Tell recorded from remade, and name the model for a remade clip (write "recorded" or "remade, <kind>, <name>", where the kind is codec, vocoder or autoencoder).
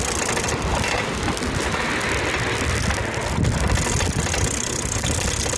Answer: recorded